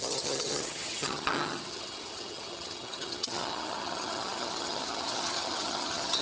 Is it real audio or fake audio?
fake